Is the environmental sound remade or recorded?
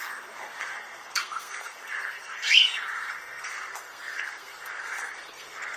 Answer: remade